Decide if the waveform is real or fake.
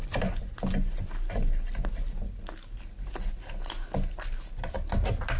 real